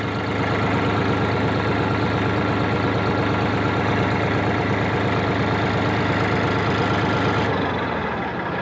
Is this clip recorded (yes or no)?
yes